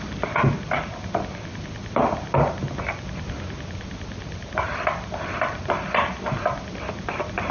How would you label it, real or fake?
real